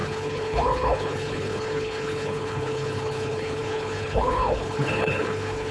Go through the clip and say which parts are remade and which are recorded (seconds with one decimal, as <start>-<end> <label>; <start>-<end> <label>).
0.0-5.7 remade

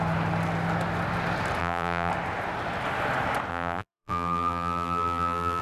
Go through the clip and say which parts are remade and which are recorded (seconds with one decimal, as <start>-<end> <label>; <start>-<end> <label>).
0.0-1.6 recorded; 1.6-2.1 remade; 2.1-3.5 recorded; 3.5-5.6 remade

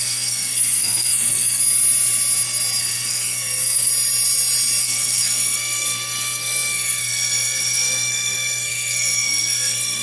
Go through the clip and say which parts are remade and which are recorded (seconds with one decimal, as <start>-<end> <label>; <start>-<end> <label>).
0.0-1.6 remade; 1.6-2.8 recorded; 2.8-3.9 remade; 3.9-4.8 recorded; 4.8-10.0 remade

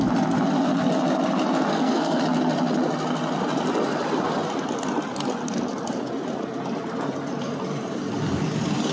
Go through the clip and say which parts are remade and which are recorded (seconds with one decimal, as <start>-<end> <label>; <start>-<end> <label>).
0.0-1.7 recorded; 1.7-2.2 remade; 2.2-8.9 recorded

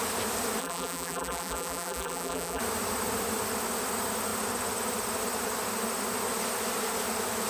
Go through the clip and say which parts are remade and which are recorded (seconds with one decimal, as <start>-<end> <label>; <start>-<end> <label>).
0.0-0.6 recorded; 0.6-2.6 remade; 2.6-7.5 recorded

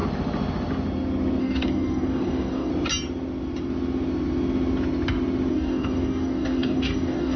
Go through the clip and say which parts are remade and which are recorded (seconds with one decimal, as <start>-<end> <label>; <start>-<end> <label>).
0.0-1.4 recorded; 1.4-2.7 remade; 2.7-5.5 recorded; 5.5-7.4 remade

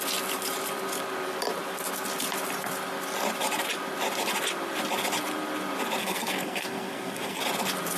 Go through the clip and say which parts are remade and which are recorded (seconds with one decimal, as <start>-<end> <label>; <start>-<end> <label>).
0.0-6.0 recorded; 6.0-7.4 remade; 7.4-8.0 recorded